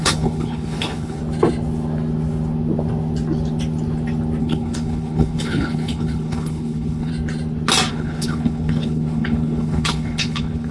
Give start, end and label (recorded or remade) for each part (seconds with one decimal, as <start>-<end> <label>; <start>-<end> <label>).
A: 0.0-1.2 remade; 1.2-4.4 recorded; 4.4-7.1 remade; 7.1-7.9 recorded; 7.9-10.7 remade